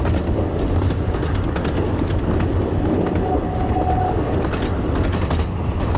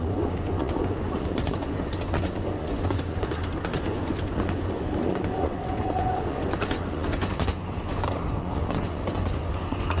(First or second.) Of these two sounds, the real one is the first